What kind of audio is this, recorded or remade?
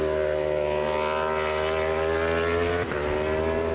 recorded